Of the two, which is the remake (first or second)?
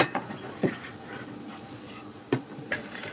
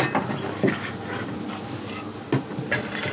first